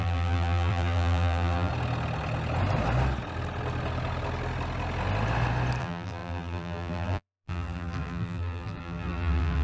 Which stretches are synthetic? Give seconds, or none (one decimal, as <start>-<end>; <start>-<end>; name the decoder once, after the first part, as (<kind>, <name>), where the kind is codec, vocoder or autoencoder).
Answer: 0.0-1.7 (vocoder, BigVGAN v2); 5.8-9.6